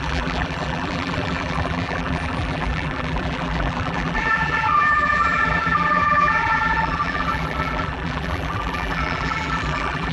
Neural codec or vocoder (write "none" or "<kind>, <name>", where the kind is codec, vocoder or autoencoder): vocoder, BigVGAN v2